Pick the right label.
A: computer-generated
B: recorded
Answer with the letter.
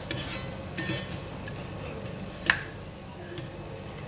B